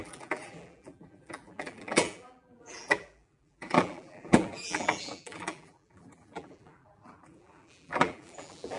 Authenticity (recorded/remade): remade